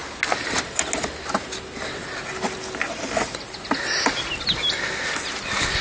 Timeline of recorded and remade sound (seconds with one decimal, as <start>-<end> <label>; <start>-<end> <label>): 0.0-5.8 recorded

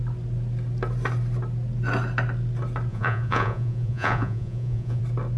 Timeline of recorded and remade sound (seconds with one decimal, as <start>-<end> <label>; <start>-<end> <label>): 0.0-2.9 recorded; 2.9-5.0 remade; 5.0-5.4 recorded

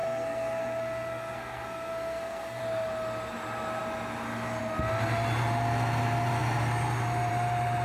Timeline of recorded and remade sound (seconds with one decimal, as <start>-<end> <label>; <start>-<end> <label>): 0.0-2.6 remade; 2.6-7.8 recorded

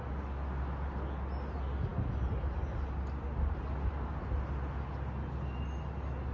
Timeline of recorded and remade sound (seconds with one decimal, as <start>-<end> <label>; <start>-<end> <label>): 0.0-6.3 recorded

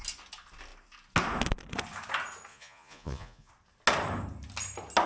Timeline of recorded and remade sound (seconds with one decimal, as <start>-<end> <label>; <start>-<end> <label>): 0.0-2.5 recorded; 2.5-3.5 remade; 3.5-5.1 recorded

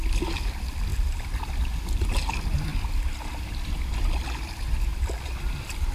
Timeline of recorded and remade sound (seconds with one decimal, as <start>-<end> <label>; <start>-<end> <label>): 0.0-5.9 recorded

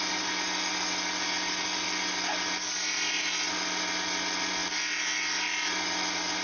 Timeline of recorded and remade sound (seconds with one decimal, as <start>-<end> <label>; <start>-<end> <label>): 0.0-6.4 recorded

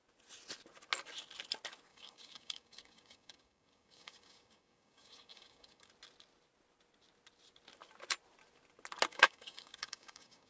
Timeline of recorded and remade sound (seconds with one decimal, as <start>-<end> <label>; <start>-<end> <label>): 0.0-1.9 recorded; 1.9-5.9 remade; 5.9-9.1 recorded; 9.1-10.5 remade